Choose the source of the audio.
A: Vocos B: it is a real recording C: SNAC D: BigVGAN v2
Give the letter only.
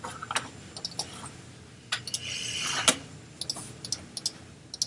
B